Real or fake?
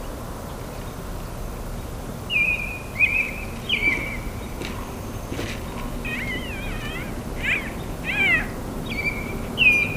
real